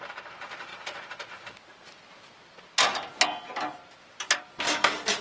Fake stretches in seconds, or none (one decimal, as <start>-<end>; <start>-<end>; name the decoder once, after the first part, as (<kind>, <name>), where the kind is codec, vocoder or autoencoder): none